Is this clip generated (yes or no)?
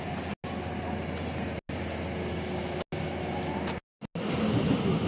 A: no